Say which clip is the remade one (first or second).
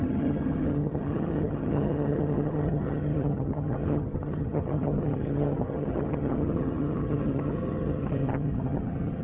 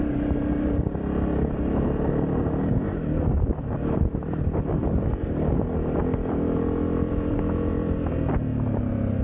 first